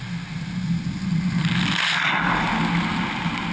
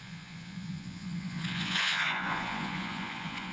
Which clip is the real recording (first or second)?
first